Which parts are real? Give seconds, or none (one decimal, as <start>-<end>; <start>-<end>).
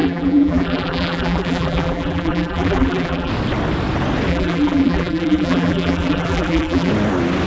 3.3-4.3; 6.9-7.5